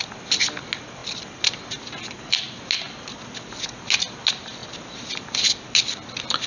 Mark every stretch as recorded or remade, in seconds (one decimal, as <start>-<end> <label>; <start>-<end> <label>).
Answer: 0.0-6.5 recorded

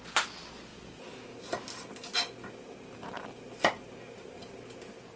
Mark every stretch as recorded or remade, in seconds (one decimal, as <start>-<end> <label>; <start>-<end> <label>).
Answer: 0.0-5.2 recorded